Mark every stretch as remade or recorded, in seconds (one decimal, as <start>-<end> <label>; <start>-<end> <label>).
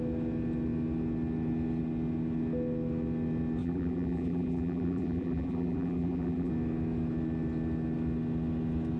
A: 0.0-3.6 recorded; 3.6-6.5 remade; 6.5-9.0 recorded